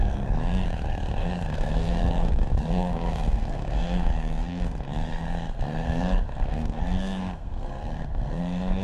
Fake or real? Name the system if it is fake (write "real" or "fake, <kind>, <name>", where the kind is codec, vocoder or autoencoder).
fake, codec, SNAC